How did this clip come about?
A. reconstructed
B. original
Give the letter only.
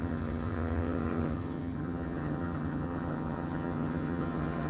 A